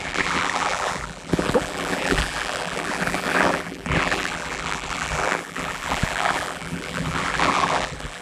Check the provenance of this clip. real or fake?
fake